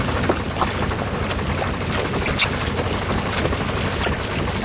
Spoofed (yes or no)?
no